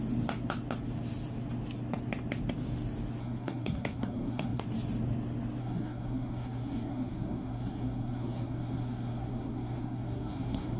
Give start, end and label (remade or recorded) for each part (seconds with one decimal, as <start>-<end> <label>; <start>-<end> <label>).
0.0-3.2 recorded; 3.2-4.6 remade; 4.6-5.6 recorded; 5.6-10.8 remade